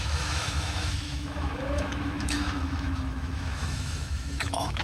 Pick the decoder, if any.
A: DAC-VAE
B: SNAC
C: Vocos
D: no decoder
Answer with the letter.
A